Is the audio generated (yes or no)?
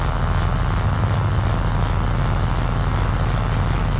no